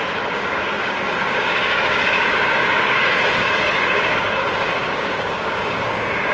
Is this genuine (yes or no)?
no